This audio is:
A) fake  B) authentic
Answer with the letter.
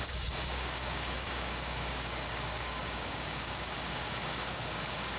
A